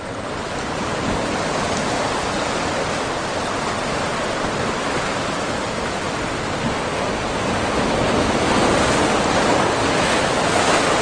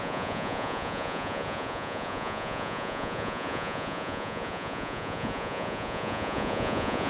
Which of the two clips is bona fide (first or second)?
first